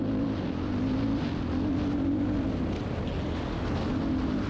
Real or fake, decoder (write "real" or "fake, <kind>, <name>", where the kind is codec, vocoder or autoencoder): real